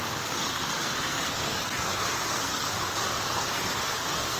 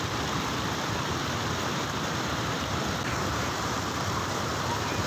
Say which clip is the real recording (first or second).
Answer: second